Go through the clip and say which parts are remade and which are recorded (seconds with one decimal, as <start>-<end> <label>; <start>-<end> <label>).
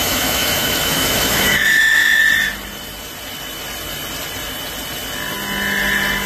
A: 0.0-2.2 remade; 2.2-6.3 recorded